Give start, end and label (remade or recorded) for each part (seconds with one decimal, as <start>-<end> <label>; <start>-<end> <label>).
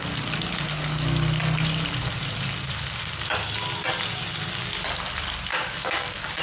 0.0-5.5 recorded; 5.5-6.4 remade